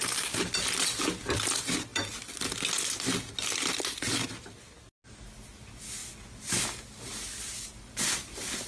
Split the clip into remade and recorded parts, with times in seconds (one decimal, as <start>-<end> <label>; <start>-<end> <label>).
0.0-8.7 recorded